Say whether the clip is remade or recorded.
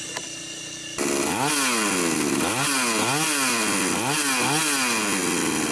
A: recorded